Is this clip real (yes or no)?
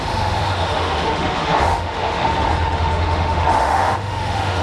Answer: no